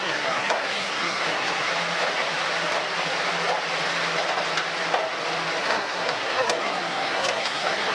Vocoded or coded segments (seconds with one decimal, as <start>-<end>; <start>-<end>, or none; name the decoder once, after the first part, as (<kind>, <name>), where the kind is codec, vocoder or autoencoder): 0.0-1.7 (codec, SNAC); 5.6-7.9